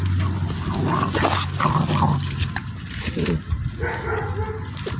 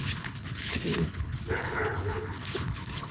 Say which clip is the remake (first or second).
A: second